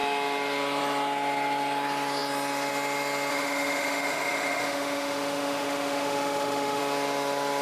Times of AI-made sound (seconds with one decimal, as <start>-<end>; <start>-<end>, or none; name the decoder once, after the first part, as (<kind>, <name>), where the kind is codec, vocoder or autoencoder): 3.3-6.8 (autoencoder, DAC-VAE)